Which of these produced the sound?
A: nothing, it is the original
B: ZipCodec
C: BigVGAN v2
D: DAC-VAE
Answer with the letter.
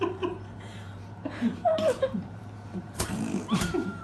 C